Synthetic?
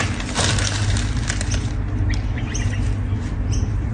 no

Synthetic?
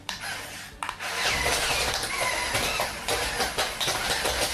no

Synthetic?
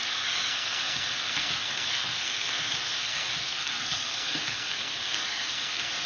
yes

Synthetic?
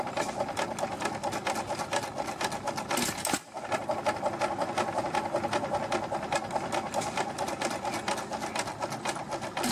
no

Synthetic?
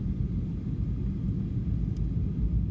no